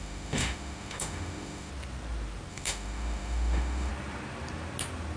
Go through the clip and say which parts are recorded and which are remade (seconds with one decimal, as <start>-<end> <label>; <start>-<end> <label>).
0.0-1.7 remade; 1.7-2.5 recorded; 2.5-3.9 remade; 3.9-5.2 recorded